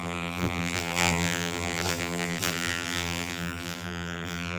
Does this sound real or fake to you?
fake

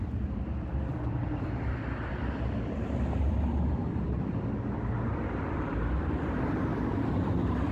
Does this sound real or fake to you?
fake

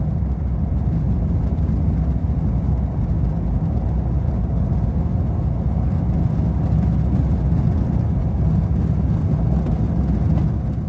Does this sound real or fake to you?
real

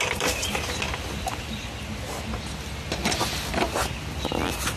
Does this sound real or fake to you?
real